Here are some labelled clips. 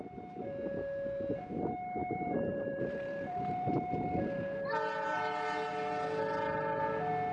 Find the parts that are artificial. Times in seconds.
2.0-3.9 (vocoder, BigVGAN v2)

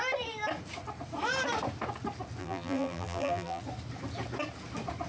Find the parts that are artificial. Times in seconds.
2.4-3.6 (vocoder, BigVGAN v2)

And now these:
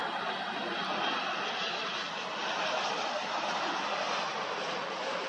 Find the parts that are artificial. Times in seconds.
0.0-3.2 (vocoder, BigVGAN v2)

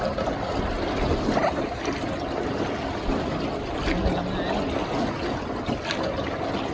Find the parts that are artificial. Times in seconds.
1.4-3.7 (vocoder, BigVGAN v2)

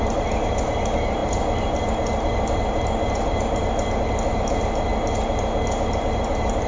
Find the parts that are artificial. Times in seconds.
0.0-4.9 (vocoder, BigVGAN v2); 6.0-6.7

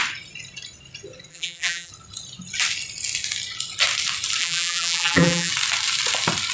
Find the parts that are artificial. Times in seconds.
1.3-1.9 (vocoder, BigVGAN v2); 4.4-5.5

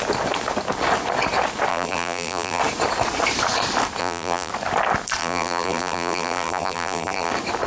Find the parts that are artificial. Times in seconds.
1.7-2.6 (vocoder, BigVGAN v2); 4.0-4.5; 5.2-7.3

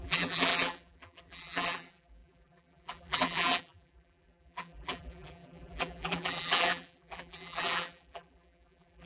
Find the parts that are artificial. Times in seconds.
0.0-9.1 (vocoder, BigVGAN v2)